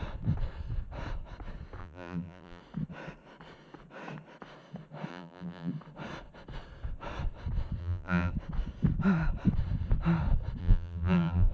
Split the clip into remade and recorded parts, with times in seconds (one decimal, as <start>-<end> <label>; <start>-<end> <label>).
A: 0.0-1.8 recorded; 1.8-2.6 remade; 2.6-5.1 recorded; 5.1-5.7 remade; 5.7-7.8 recorded; 7.8-8.3 remade; 8.3-10.6 recorded; 10.6-11.5 remade